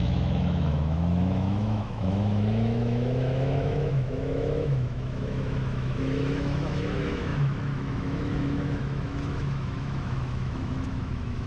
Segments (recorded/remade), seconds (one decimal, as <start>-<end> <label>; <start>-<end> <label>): 0.0-11.5 remade